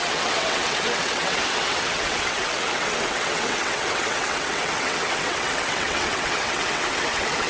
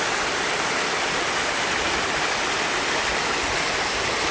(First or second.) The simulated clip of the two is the first